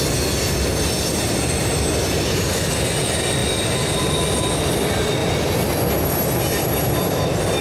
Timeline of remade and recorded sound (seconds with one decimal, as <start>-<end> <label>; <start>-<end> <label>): 0.0-3.4 recorded; 3.4-4.1 remade; 4.1-7.6 recorded